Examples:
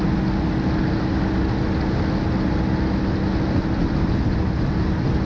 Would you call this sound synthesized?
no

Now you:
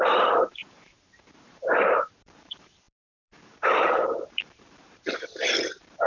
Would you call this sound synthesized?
yes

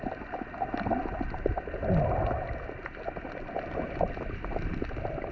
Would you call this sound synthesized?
no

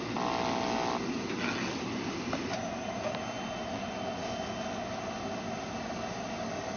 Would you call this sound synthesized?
no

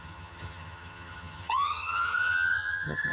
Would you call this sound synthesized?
yes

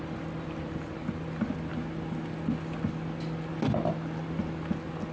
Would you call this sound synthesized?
no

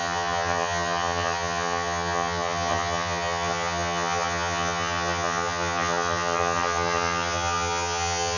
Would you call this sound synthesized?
yes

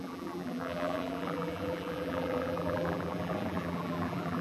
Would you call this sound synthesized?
yes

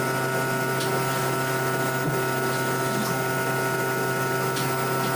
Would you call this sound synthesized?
no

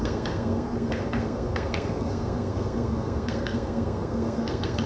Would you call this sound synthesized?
yes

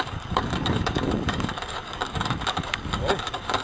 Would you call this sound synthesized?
yes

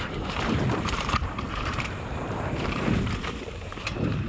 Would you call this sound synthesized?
yes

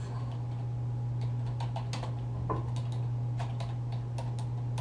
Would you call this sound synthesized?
no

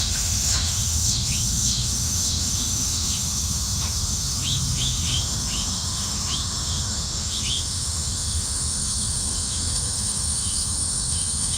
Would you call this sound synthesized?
yes